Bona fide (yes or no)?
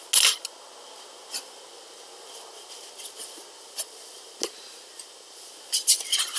yes